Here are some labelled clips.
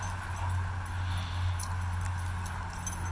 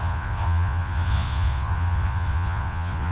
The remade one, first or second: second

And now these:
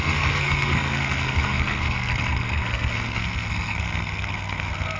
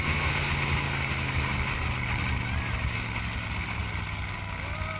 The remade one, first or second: first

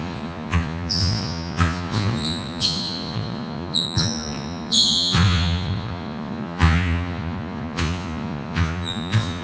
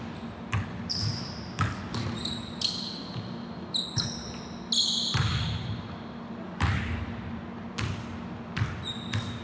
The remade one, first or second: first